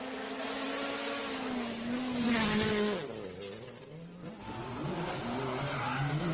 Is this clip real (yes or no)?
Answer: yes